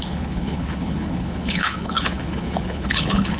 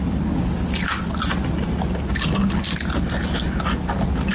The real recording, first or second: second